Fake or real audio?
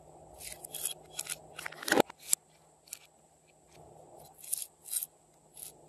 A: real